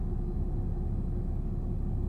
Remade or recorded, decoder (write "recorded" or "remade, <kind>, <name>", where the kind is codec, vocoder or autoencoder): recorded